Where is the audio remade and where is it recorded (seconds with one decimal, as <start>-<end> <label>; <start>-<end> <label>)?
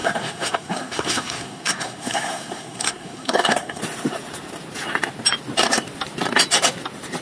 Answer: 0.0-3.8 remade; 3.8-7.2 recorded